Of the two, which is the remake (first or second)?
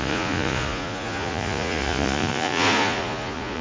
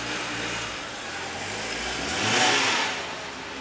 first